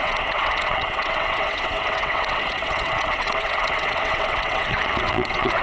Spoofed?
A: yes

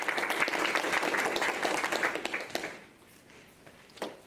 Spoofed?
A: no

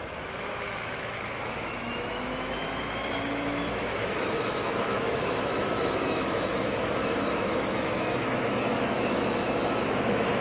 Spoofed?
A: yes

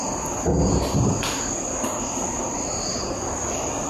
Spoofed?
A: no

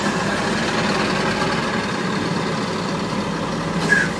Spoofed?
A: no